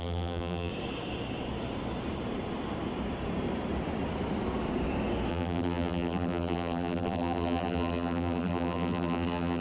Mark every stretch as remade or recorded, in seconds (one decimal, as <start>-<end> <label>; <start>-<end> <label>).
0.0-0.7 remade; 0.7-5.3 recorded; 5.3-9.6 remade